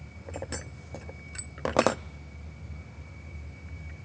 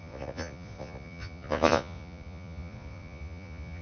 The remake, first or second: second